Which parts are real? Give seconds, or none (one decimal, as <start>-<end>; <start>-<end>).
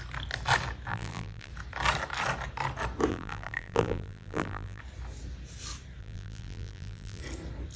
0.0-0.9; 1.5-3.1; 4.8-6.0; 7.2-7.8